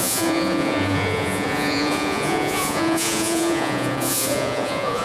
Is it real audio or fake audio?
fake